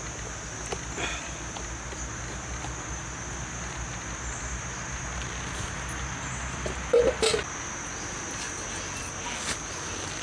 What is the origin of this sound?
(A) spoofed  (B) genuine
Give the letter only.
B